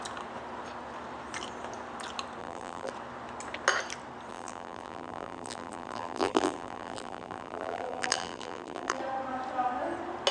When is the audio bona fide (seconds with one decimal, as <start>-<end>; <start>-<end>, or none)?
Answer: 0.0-2.4; 2.9-4.3; 9.0-10.3

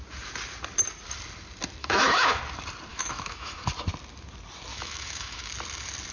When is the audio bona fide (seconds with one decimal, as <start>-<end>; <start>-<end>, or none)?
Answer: 0.0-1.8; 2.4-2.9; 3.6-4.7; 5.5-6.1

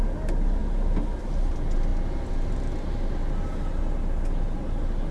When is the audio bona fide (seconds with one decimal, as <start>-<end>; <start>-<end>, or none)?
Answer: 0.0-5.1

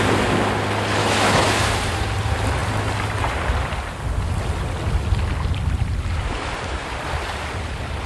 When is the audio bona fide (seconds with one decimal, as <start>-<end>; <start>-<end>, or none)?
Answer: 0.0-1.0; 1.5-8.1